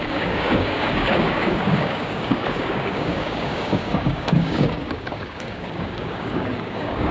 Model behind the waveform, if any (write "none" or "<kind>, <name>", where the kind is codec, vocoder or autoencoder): codec, DAC